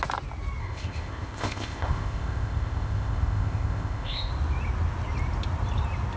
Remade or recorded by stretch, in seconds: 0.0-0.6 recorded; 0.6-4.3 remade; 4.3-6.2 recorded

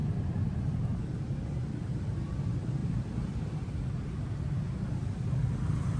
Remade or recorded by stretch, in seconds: 0.0-6.0 recorded